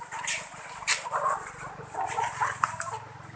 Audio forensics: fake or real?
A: real